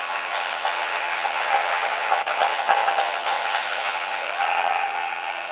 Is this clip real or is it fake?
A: fake